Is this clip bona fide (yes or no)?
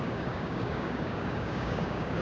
no